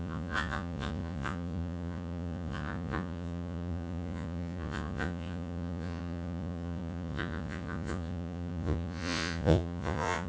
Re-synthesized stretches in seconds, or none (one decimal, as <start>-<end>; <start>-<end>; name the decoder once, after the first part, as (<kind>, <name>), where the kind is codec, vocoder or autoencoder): 0.0-10.3 (vocoder, Vocos)

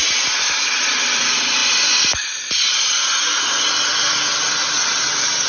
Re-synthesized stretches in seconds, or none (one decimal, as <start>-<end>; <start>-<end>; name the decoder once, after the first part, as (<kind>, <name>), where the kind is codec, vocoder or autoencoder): none

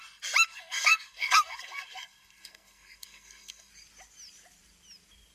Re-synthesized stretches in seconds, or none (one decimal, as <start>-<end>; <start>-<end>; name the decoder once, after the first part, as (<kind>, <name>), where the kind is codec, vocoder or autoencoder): 0.5-3.7 (codec, SNAC)

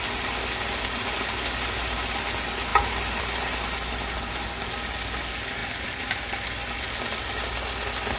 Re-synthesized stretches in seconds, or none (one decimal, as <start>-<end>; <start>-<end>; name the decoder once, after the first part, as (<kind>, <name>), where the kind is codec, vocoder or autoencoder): none

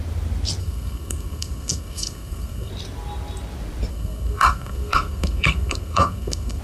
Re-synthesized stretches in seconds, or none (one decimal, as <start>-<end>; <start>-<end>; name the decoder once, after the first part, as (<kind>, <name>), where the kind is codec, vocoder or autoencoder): 0.6-2.7 (codec, SNAC); 3.9-6.6

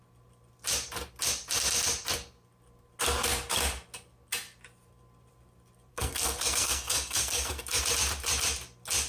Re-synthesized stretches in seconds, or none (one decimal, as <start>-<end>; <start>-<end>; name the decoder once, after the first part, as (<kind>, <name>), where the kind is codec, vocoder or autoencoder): 5.9-7.8 (codec, SNAC)

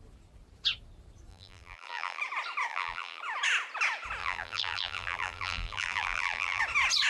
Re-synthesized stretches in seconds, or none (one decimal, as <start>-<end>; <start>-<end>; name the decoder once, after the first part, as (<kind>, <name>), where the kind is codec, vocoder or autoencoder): 1.3-2.2 (vocoder, BigVGAN v2); 2.7-3.2; 4.2-6.6

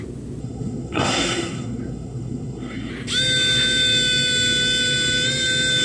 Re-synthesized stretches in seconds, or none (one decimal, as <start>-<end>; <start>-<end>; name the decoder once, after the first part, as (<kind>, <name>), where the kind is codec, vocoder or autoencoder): 0.4-2.9 (codec, SNAC)